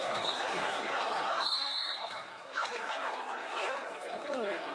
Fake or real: fake